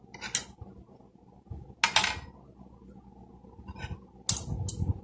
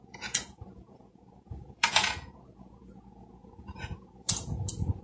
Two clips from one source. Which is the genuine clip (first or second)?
first